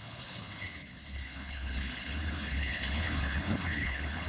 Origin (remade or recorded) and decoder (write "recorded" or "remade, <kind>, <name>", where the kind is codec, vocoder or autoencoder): remade, codec, HILCodec